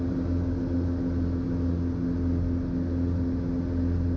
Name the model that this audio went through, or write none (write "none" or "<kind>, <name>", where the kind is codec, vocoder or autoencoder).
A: none